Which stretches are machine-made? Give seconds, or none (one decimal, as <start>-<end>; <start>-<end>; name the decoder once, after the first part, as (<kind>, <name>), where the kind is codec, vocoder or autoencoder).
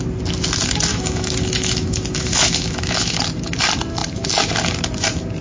0.9-3.2 (autoencoder, DAC-VAE)